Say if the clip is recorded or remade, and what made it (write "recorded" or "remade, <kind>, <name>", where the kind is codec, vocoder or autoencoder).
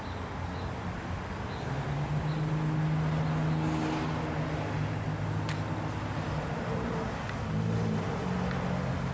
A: recorded